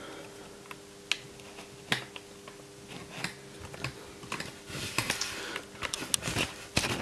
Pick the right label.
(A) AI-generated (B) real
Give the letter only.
B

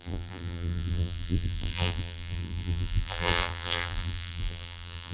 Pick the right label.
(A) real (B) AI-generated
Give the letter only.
B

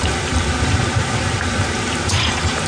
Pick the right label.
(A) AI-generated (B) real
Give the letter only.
A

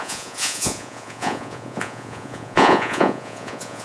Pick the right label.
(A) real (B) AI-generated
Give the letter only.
B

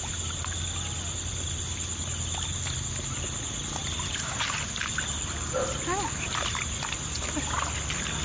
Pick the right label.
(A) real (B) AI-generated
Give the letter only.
A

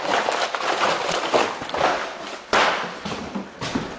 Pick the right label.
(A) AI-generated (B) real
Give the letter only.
B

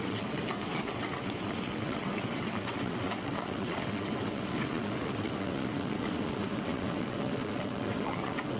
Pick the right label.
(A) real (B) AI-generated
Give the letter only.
B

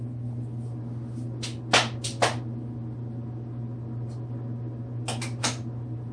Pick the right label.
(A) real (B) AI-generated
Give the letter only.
A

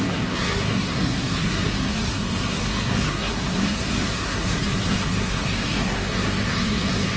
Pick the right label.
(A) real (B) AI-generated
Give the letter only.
B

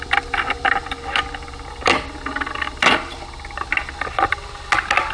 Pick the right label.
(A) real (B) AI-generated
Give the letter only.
A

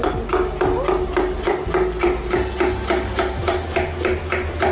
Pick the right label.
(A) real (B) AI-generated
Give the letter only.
A